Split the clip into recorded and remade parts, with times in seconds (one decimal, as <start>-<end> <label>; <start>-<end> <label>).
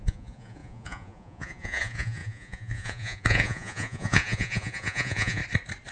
0.0-5.4 remade; 5.4-5.9 recorded